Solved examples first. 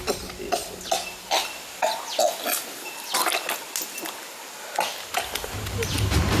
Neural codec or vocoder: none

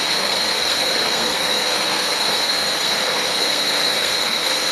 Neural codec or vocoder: codec, SNAC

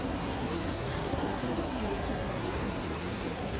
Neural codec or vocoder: codec, SNAC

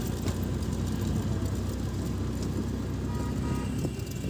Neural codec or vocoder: none